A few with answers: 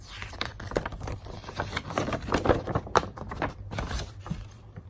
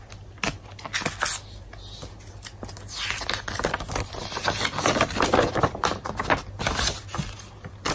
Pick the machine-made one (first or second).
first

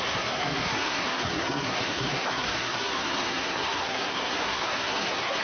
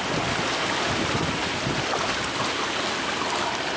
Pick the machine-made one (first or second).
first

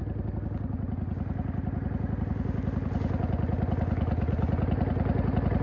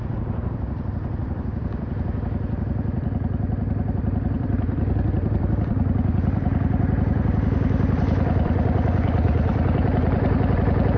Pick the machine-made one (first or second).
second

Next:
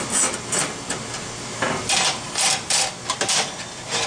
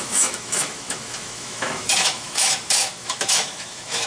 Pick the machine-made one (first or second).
second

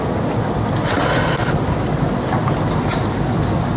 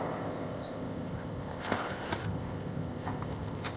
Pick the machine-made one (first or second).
second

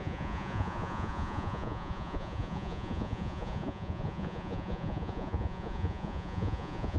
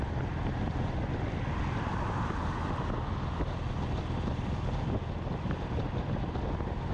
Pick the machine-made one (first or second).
first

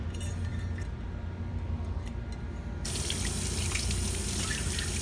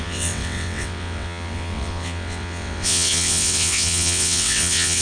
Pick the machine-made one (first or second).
second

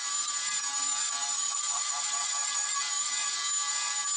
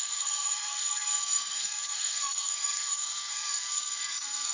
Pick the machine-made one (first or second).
second